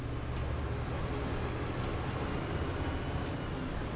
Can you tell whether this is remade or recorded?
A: recorded